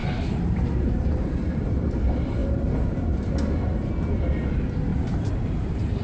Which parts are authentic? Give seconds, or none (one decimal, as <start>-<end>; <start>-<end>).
1.7-2.4; 3.9-4.9